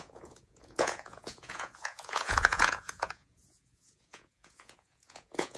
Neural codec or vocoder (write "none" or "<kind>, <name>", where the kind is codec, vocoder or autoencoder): vocoder, Vocos